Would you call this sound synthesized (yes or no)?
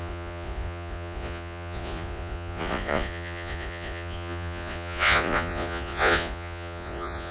yes